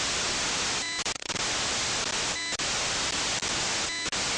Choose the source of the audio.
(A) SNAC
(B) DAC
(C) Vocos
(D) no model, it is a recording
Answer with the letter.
D